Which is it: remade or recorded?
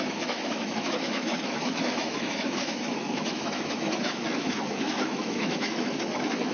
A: remade